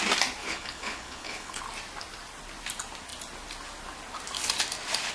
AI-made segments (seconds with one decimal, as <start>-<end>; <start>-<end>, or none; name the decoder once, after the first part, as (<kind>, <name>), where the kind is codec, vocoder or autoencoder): 0.4-1.6 (codec, HILCodec)